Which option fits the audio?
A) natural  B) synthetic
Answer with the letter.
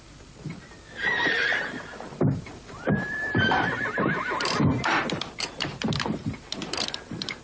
B